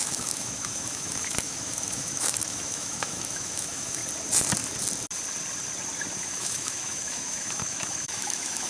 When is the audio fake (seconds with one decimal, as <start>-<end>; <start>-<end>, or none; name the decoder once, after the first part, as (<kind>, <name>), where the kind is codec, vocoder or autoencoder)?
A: 0.0-4.0 (autoencoder, DAC-VAE); 6.2-8.7